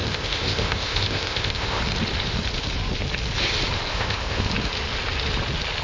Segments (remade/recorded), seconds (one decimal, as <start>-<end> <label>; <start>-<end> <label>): 0.0-1.8 remade; 1.8-3.9 recorded; 3.9-4.5 remade; 4.5-5.8 recorded